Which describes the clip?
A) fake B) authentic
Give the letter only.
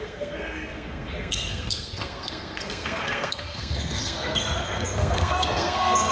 A